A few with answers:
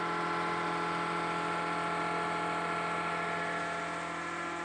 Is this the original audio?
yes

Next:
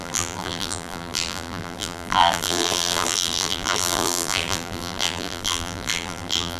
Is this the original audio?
no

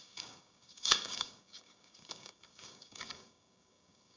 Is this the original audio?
no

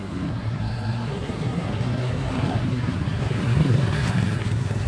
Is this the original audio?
no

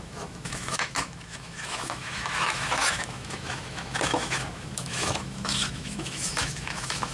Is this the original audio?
no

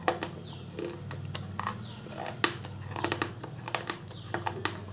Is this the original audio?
yes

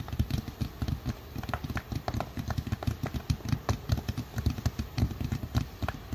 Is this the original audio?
yes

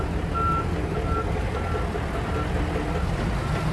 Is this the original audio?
no